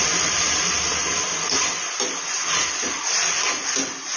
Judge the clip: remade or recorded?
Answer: recorded